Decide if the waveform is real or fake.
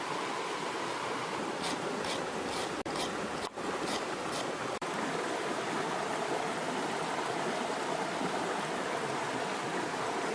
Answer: fake